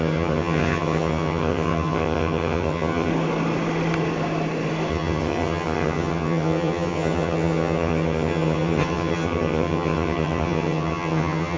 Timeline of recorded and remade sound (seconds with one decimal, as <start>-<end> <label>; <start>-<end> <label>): 0.0-3.1 remade; 3.1-4.9 recorded; 4.9-11.6 remade